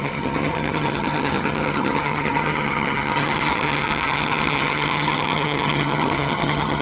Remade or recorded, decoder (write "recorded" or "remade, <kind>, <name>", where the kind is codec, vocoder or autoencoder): remade, vocoder, HiFi-GAN